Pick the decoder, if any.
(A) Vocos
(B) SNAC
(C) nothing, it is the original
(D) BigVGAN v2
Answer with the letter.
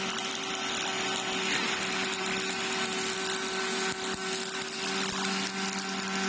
C